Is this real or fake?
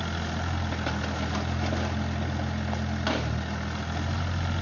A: real